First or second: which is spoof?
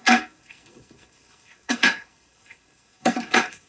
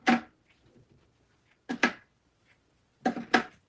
first